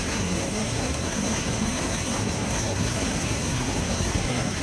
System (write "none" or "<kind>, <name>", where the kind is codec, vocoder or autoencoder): codec, SNAC